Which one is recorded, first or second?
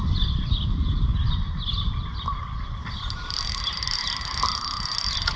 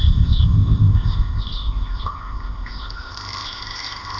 first